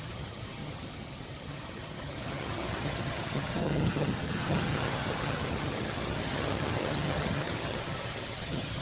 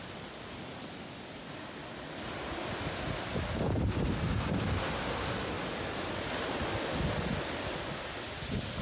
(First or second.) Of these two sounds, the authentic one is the second